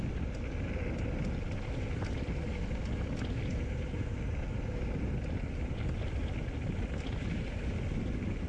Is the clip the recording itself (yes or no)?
yes